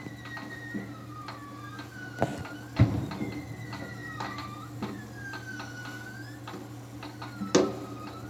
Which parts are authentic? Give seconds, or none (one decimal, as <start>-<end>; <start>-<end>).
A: 0.0-2.3; 3.1-4.0; 5.0-8.3